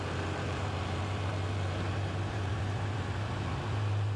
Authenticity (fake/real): fake